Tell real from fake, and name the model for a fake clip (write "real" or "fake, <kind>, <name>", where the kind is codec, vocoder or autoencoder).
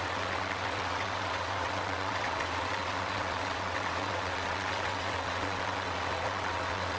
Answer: fake, vocoder, WaveNeXt